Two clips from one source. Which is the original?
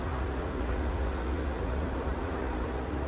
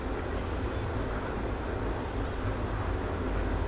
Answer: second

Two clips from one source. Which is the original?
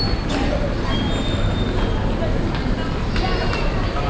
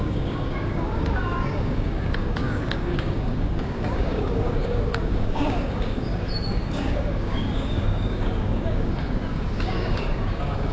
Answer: first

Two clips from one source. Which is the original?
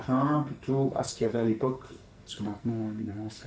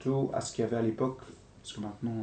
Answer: second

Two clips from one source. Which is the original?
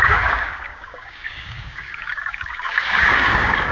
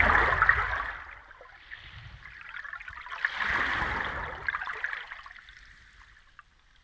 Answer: second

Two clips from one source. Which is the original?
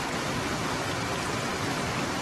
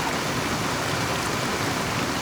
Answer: second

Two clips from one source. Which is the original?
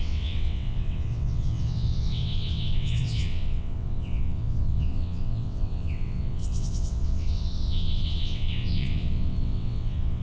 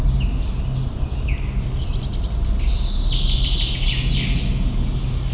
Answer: second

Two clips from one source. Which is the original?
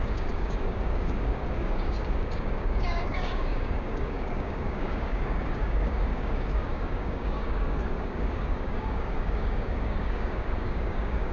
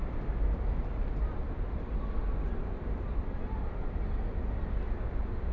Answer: second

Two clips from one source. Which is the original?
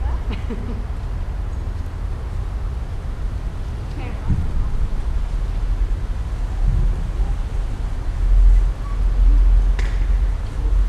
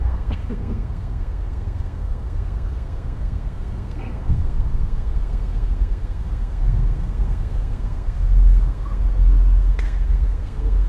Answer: first